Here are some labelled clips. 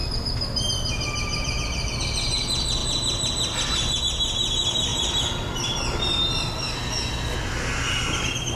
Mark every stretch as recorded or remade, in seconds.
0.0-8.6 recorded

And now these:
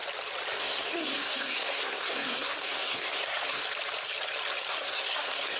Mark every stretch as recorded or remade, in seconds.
0.0-0.6 recorded; 0.6-3.6 remade; 3.6-4.7 recorded; 4.7-5.6 remade

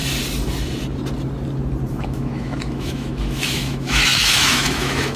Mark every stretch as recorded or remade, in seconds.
0.0-1.9 recorded; 1.9-5.2 remade

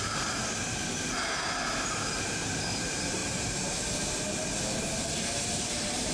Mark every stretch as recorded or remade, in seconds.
0.0-0.6 remade; 0.6-2.4 recorded; 2.4-3.2 remade; 3.2-5.5 recorded; 5.5-6.1 remade

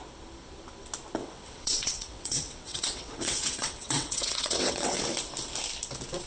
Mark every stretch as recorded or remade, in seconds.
0.0-1.2 recorded; 1.2-5.0 remade; 5.0-6.3 recorded

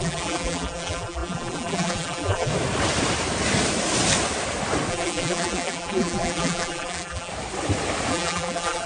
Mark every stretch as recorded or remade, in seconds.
0.0-2.5 remade; 2.5-4.9 recorded; 4.9-7.3 remade; 7.3-8.1 recorded; 8.1-8.9 remade

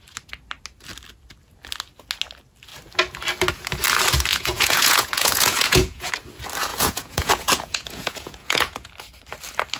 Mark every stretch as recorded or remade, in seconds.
0.0-4.3 recorded; 4.3-6.1 remade; 6.1-6.7 recorded; 6.7-8.9 remade; 8.9-9.8 recorded